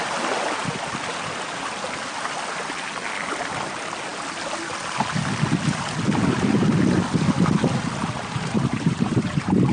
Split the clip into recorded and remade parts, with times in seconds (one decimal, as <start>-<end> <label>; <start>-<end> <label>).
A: 0.0-8.0 recorded; 8.0-9.7 remade